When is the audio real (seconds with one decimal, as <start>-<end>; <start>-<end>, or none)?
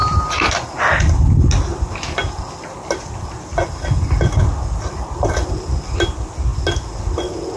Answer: 0.9-7.6